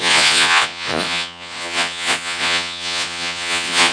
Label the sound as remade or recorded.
remade